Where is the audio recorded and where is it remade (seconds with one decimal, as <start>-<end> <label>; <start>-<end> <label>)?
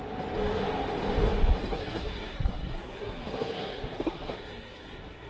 0.0-1.7 recorded; 1.7-5.3 remade